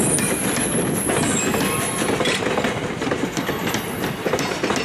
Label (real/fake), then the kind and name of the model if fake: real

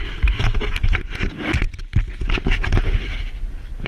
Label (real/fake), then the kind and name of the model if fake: real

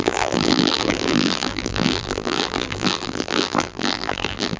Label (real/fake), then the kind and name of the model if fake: fake, vocoder, BigVGAN v2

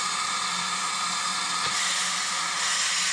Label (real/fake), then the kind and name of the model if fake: real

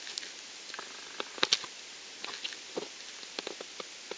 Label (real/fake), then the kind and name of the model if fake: real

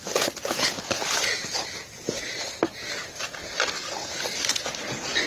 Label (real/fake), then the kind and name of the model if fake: real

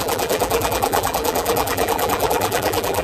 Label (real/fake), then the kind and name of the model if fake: fake, vocoder, BigVGAN v2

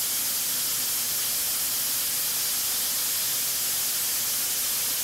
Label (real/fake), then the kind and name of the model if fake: real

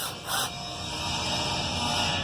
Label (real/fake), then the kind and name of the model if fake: real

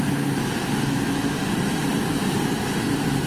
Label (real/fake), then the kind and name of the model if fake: real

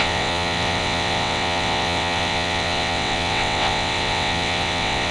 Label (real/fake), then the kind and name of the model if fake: fake, vocoder, WaveNeXt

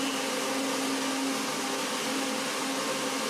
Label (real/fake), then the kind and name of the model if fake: real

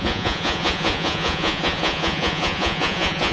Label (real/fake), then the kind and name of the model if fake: fake, vocoder, Vocos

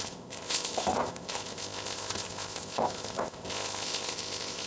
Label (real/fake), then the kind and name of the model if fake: fake, codec, ZipCodec